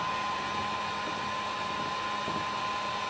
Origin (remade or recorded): recorded